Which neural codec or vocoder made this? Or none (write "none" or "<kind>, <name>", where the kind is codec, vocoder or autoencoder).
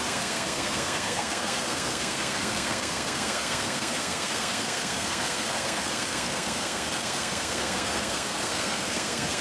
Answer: codec, SNAC